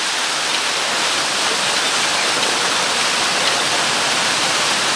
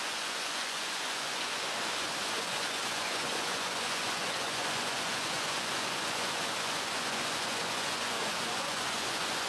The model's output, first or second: second